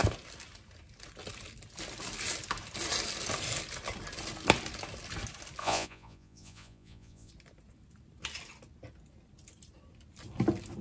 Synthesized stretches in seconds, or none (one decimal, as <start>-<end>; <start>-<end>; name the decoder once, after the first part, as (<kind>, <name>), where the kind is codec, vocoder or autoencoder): 5.6-7.3 (vocoder, Vocos)